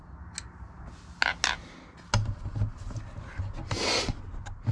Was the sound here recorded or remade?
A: recorded